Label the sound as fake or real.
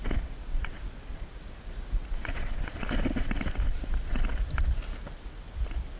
real